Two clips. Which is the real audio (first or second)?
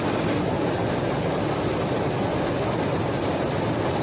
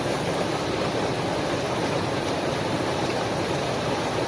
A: first